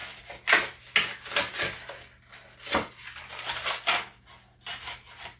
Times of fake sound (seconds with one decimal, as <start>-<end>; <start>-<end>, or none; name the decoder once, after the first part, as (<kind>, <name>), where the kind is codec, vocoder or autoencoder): none